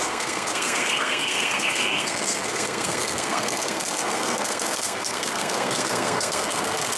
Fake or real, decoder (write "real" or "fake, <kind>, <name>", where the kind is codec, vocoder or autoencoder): fake, codec, SNAC